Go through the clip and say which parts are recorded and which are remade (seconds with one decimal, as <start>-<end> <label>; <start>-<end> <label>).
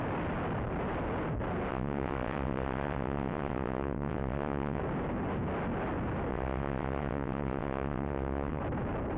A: 0.0-1.7 recorded; 1.7-4.8 remade; 4.8-6.3 recorded; 6.3-8.6 remade; 8.6-9.2 recorded